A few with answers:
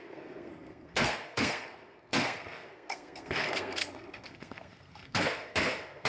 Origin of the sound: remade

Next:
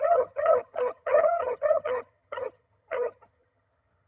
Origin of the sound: remade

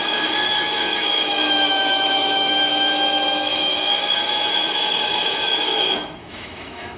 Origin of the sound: remade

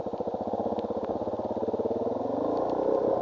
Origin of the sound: recorded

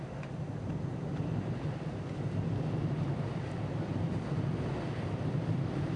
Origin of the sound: remade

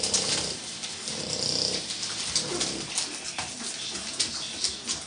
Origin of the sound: recorded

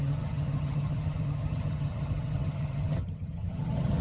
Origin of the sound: remade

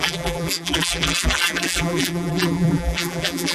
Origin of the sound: remade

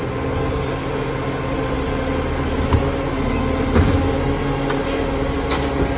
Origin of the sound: recorded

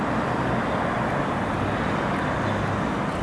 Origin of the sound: recorded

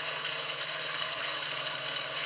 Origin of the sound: remade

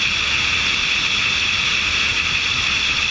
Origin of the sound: recorded